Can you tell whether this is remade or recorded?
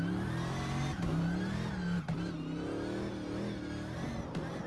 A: recorded